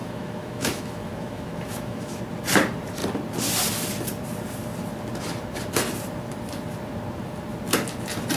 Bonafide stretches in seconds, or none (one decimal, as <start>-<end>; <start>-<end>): 2.2-8.4